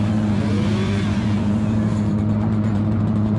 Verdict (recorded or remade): remade